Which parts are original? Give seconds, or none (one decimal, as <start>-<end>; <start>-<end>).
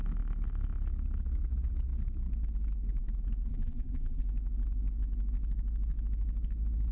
0.0-3.5; 4.2-6.9